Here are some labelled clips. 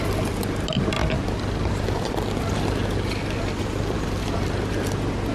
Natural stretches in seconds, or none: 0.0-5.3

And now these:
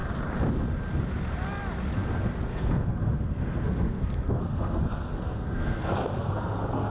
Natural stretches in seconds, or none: 0.0-2.5

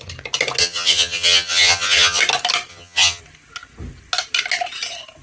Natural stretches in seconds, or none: 0.0-0.6; 2.2-2.7; 3.2-5.2

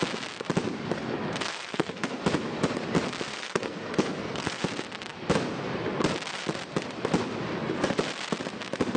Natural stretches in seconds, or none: 0.0-1.5; 2.2-3.3; 4.6-9.0

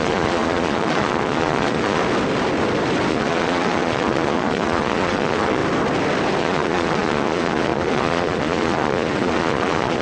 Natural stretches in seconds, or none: 2.0-3.1; 5.6-6.4

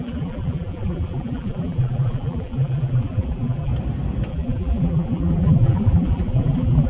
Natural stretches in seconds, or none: 3.7-4.3